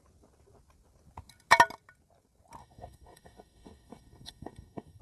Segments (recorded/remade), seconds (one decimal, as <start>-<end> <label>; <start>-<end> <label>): 0.0-2.6 recorded; 2.6-5.0 remade